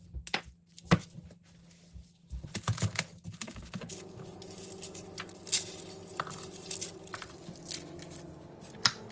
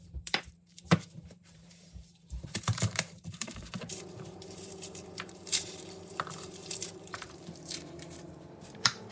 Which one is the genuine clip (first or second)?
first